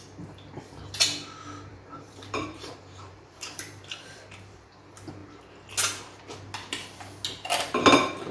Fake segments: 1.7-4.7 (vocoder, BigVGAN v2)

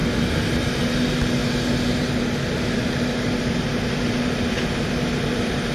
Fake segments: none

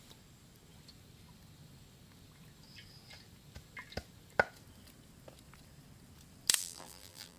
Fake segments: 6.6-7.4 (vocoder, BigVGAN v2)

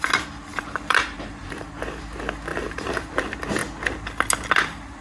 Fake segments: 0.5-1.5 (vocoder, BigVGAN v2); 2.5-3.2

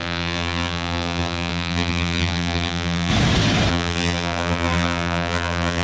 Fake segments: 0.0-3.1 (vocoder, BigVGAN v2); 3.7-5.8

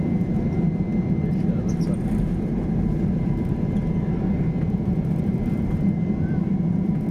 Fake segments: 0.0-0.9 (vocoder, BigVGAN v2); 1.5-7.1

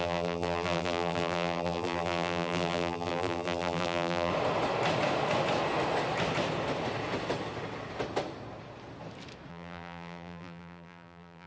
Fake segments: 0.0-4.3 (vocoder, BigVGAN v2); 9.5-11.5